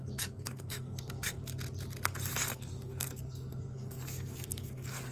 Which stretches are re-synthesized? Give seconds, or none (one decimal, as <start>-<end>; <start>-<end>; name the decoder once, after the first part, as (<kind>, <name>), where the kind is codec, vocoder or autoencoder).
0.0-1.4 (codec, SNAC); 2.5-5.1